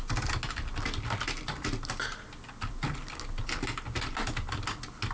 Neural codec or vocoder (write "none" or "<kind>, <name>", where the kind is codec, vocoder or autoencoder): none